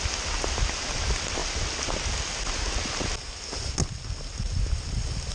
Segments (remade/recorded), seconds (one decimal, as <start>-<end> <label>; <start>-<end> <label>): 0.0-5.3 recorded